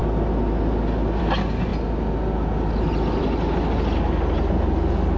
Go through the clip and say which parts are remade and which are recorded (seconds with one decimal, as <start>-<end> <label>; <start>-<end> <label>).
0.0-5.2 recorded

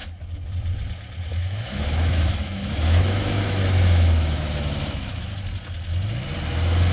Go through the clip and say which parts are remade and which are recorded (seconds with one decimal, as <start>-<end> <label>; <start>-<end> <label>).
0.0-1.3 recorded; 1.3-5.2 remade; 5.2-6.9 recorded

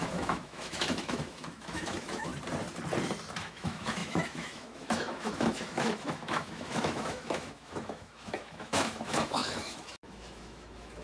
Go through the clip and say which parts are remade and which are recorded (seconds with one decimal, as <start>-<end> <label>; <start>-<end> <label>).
0.0-2.3 remade; 2.3-3.4 recorded; 3.4-11.0 remade

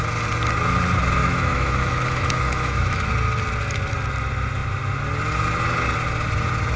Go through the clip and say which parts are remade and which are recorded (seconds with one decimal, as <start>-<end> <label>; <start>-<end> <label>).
0.0-1.2 recorded; 1.2-3.1 remade; 3.1-6.8 recorded

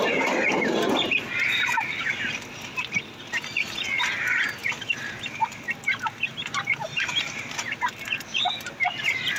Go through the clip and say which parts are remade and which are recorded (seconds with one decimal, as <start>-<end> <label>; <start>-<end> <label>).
0.0-9.4 recorded